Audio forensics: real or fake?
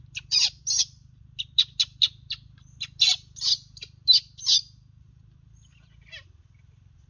real